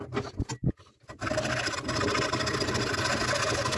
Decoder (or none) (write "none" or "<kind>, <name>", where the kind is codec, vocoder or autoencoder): none